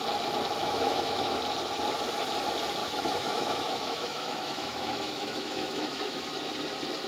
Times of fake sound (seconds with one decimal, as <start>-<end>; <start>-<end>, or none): 0.6-1.4; 2.8-6.2